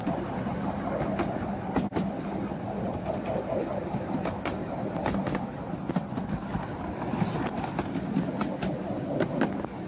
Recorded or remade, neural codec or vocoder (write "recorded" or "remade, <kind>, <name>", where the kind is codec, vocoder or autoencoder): recorded